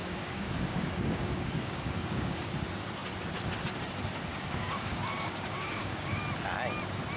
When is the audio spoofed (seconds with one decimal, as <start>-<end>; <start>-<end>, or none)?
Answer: 0.0-2.4; 4.3-6.2